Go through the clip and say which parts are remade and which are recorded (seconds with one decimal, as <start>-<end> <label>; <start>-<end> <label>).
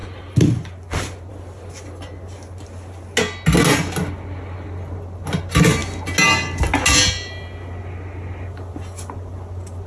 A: 0.0-9.9 recorded